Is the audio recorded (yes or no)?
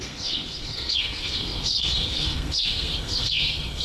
no